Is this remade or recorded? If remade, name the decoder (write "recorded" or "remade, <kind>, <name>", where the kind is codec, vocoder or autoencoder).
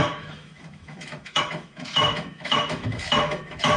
remade, autoencoder, DAC-VAE